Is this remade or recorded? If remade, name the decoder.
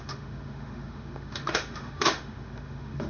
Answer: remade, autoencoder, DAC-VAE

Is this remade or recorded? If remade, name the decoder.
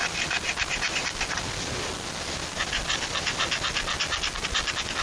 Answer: recorded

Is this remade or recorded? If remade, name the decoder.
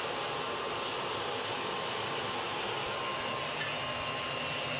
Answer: recorded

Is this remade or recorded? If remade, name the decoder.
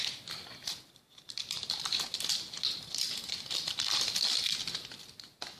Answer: recorded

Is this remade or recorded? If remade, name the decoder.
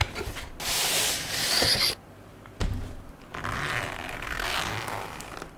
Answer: recorded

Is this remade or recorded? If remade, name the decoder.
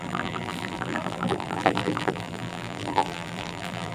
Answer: remade, vocoder, BigVGAN v2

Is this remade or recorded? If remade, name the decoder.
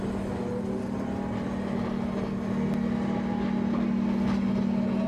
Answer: recorded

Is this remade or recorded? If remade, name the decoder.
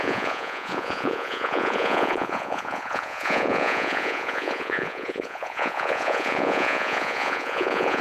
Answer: remade, vocoder, Vocos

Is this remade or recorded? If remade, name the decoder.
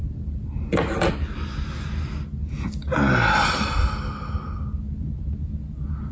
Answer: recorded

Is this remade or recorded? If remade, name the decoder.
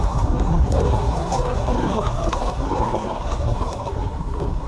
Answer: remade, codec, SNAC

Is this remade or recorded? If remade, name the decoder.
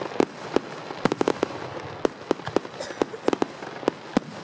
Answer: recorded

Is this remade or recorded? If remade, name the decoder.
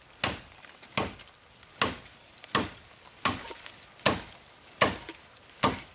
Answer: recorded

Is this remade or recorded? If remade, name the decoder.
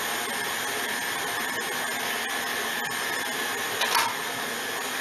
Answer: recorded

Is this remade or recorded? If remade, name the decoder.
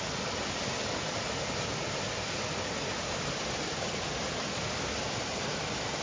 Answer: remade, vocoder, BigVGAN v2